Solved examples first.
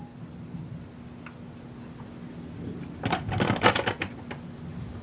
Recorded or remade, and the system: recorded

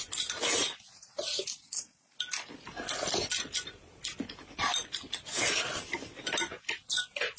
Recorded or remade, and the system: recorded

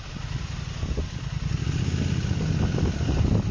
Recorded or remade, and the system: recorded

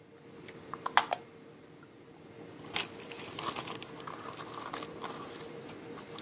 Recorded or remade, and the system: recorded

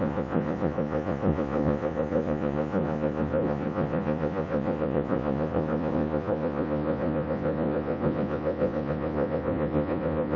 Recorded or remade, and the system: remade, vocoder, Vocos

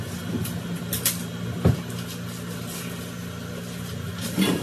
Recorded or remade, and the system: recorded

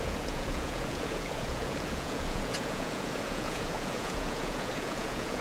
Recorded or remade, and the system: remade, vocoder, Vocos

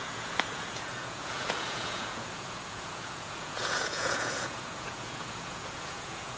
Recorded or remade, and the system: remade, vocoder, Vocos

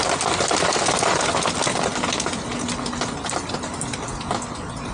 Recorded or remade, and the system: recorded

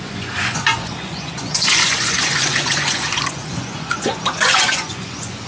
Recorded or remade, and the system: remade, vocoder, Vocos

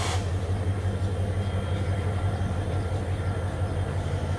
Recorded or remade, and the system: recorded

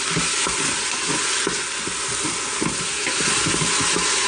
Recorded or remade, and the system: recorded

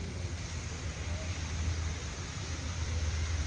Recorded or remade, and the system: recorded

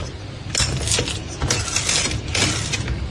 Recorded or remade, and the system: recorded